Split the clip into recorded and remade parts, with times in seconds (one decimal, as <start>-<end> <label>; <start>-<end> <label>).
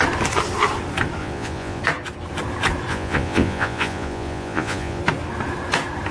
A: 0.0-1.2 recorded; 1.2-1.8 remade; 1.8-2.9 recorded; 2.9-5.0 remade; 5.0-6.1 recorded